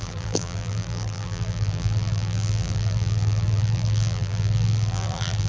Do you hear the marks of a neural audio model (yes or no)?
yes